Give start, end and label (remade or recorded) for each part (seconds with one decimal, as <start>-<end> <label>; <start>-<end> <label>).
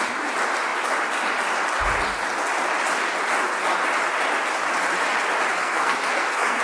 0.0-5.6 recorded; 5.6-6.6 remade